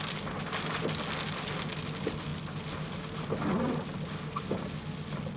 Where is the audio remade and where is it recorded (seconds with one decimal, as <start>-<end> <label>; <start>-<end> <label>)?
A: 0.0-5.4 recorded